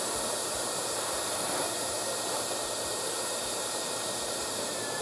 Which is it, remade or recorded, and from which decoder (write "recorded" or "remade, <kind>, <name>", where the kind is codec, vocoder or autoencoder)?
remade, vocoder, BigVGAN v2